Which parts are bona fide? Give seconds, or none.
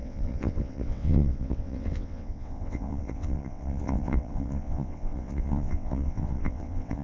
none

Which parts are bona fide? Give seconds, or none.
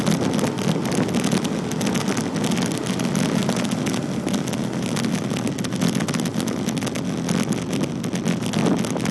0.0-9.1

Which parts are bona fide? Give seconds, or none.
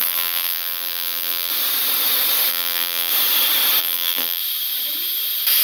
1.5-2.5; 3.1-3.8; 4.4-5.6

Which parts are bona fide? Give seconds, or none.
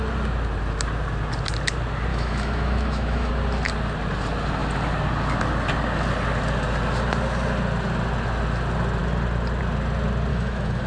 0.0-2.1; 3.3-10.3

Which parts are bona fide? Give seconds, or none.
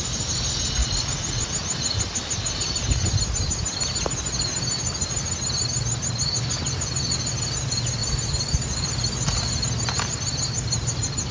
0.0-0.8; 1.5-11.3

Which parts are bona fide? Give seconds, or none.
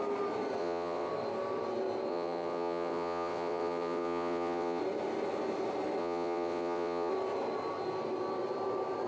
0.0-0.6; 1.1-2.1; 4.8-6.0; 7.1-9.1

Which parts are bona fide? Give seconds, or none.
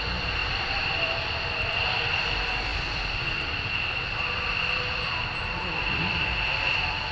0.0-0.4; 2.0-2.7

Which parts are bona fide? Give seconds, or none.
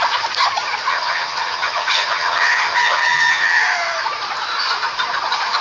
0.0-0.9; 3.6-5.6